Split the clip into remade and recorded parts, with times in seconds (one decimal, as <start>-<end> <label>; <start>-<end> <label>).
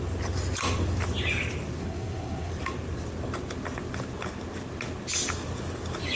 0.0-1.8 recorded; 1.8-2.5 remade; 2.5-6.2 recorded